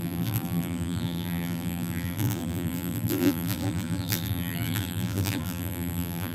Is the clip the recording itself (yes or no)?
no